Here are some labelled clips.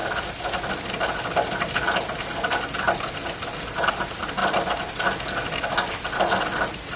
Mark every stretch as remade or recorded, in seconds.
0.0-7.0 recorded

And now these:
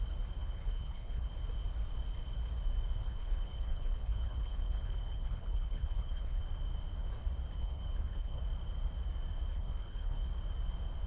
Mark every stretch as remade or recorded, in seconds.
0.0-0.4 recorded; 0.4-1.3 remade; 1.3-3.0 recorded; 3.0-6.4 remade; 6.4-7.6 recorded; 7.6-8.4 remade; 8.4-9.5 recorded; 9.5-10.3 remade; 10.3-11.1 recorded

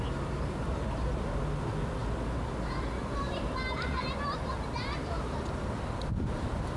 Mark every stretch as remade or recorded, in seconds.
0.0-6.8 recorded

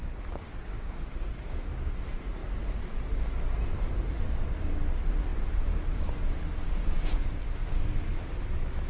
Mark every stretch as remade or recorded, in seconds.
0.0-1.9 remade; 1.9-6.8 recorded; 6.8-7.8 remade; 7.8-8.9 recorded

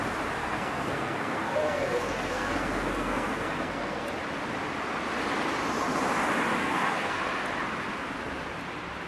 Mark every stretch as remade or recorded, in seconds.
0.0-0.4 recorded; 0.4-4.1 remade; 4.1-6.6 recorded; 6.6-7.2 remade; 7.2-9.1 recorded